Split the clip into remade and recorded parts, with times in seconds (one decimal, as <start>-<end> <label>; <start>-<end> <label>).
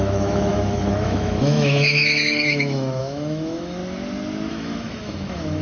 0.0-3.8 remade; 3.8-4.5 recorded; 4.5-5.6 remade